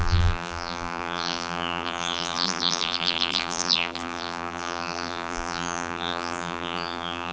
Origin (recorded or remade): remade